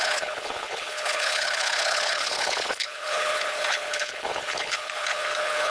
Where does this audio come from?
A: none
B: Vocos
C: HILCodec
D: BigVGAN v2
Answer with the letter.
C